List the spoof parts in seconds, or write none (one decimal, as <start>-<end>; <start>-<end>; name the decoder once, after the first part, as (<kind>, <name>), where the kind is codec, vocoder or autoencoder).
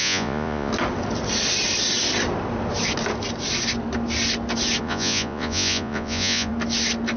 0.0-0.7 (vocoder, Vocos); 4.8-6.5